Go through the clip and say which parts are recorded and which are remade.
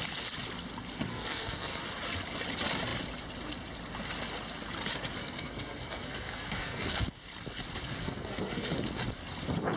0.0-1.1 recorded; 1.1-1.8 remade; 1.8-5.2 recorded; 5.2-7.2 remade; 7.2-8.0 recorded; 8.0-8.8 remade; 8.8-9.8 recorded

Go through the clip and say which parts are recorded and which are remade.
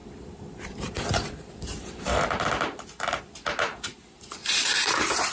0.0-3.2 remade; 3.2-4.4 recorded; 4.4-5.3 remade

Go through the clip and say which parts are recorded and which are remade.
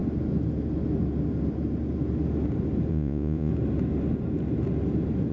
0.0-2.9 recorded; 2.9-3.5 remade; 3.5-5.3 recorded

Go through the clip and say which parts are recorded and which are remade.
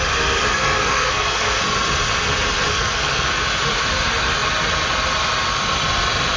0.0-0.5 recorded; 0.5-1.6 remade; 1.6-2.7 recorded; 2.7-3.3 remade; 3.3-6.4 recorded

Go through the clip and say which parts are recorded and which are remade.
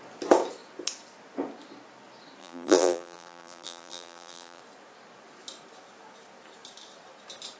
0.0-2.4 recorded; 2.4-4.6 remade; 4.6-7.6 recorded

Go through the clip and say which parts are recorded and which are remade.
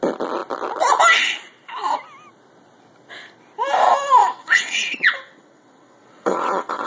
0.0-4.2 recorded; 4.2-6.9 remade